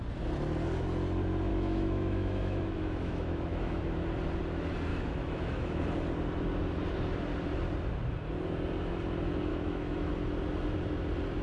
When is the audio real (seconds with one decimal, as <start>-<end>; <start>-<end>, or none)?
0.0-1.5; 3.8-4.9; 5.8-9.5; 10.1-11.4